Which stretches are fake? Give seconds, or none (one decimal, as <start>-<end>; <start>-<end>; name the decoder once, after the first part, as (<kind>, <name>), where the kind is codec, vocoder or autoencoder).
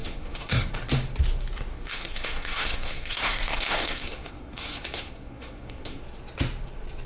0.0-0.8 (codec, SNAC); 1.7-6.0